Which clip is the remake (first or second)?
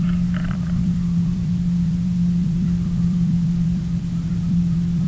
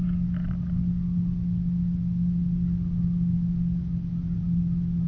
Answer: first